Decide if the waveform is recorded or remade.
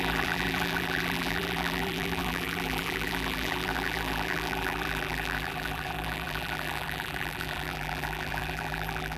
remade